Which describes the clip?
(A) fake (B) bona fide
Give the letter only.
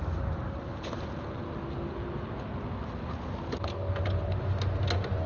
B